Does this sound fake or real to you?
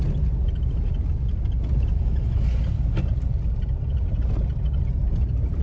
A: real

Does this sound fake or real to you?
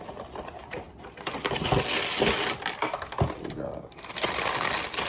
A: real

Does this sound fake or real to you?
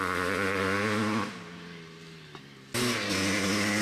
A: real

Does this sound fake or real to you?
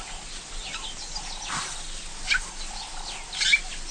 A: real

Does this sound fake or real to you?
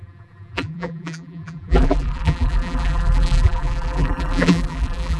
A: fake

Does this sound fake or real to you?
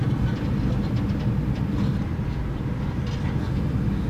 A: real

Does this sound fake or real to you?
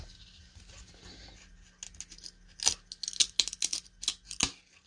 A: real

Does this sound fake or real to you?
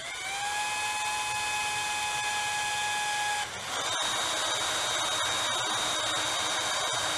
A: real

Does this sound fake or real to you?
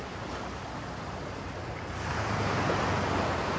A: real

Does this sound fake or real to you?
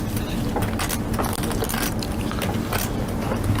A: real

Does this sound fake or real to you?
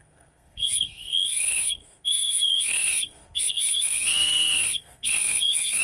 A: fake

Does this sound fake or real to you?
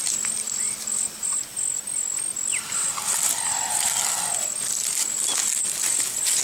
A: real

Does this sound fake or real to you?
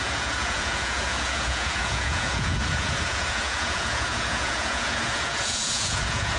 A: fake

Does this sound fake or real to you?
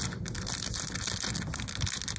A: real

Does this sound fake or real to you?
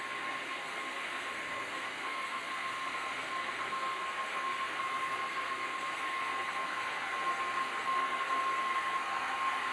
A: fake